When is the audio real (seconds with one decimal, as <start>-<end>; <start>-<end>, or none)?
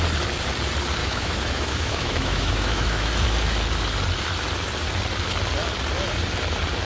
0.0-1.0; 3.1-6.8